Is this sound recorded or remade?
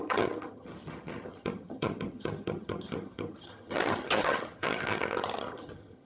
remade